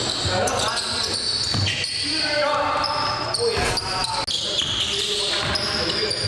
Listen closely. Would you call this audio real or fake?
real